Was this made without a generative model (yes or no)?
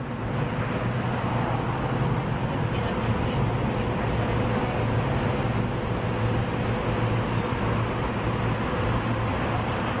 yes